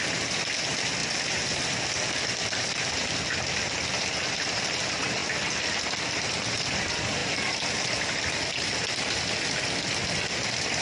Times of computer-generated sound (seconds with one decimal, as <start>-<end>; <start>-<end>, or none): 1.0-1.8